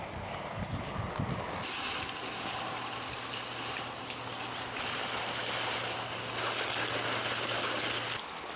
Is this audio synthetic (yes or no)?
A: no